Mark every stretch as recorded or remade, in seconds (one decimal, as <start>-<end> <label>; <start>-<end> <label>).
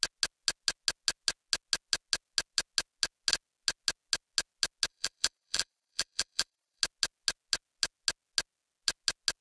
0.0-4.9 recorded; 4.9-6.8 remade; 6.8-9.4 recorded